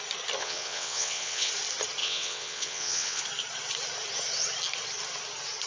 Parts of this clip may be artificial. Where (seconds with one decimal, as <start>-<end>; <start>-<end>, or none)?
0.4-1.5; 2.0-3.2